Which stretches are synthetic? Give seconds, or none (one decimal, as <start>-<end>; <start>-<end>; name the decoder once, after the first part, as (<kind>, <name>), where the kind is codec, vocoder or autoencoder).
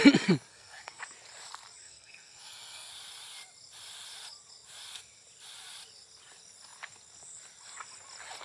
0.5-1.0 (codec, SNAC); 1.8-2.9